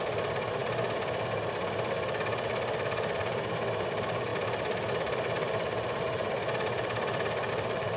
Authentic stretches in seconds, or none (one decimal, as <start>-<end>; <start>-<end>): 0.0-8.0